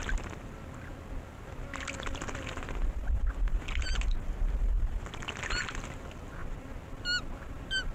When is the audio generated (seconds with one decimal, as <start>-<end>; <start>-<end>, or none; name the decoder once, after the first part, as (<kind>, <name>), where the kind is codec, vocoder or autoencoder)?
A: none